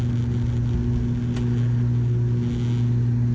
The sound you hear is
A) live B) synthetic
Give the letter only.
A